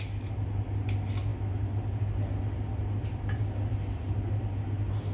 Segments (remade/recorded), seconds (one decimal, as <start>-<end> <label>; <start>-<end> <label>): 0.0-5.1 recorded